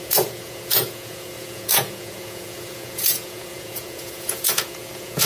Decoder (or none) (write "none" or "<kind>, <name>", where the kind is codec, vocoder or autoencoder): vocoder, Vocos